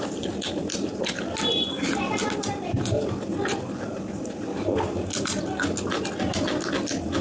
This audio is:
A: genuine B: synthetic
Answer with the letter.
A